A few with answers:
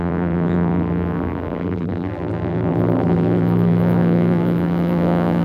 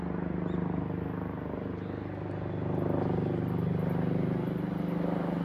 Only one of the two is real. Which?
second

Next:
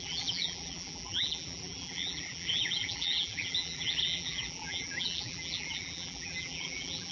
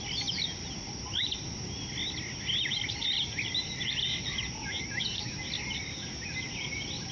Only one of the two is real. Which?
second